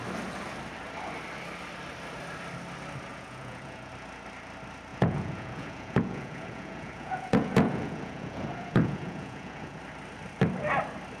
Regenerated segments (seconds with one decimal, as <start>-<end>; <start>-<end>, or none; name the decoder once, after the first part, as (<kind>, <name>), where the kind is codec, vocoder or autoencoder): 3.1-3.9 (vocoder, Vocos); 4.9-9.8